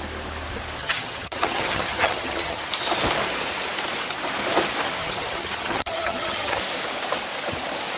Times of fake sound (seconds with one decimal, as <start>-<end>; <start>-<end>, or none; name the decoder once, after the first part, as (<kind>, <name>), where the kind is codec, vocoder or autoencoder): 0.8-2.6 (vocoder, HiFi-GAN); 5.0-6.6